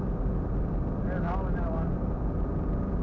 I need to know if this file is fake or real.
real